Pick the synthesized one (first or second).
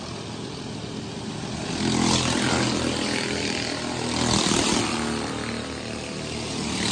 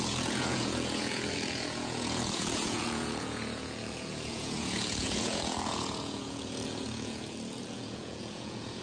second